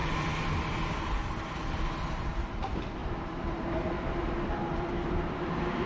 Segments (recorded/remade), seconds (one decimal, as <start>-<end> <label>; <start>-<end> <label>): 0.0-5.9 recorded